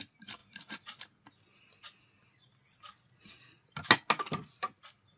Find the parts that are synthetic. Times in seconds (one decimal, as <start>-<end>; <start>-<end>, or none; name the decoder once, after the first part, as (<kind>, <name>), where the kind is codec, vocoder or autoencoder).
none